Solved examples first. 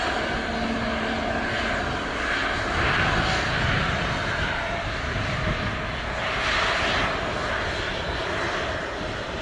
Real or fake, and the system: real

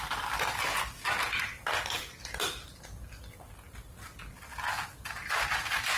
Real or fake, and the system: real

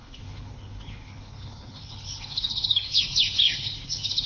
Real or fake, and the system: fake, codec, HILCodec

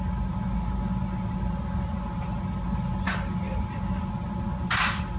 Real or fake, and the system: real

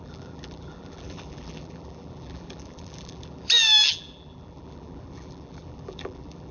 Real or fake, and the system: fake, vocoder, BigVGAN v2